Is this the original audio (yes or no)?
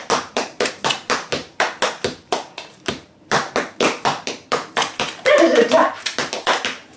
no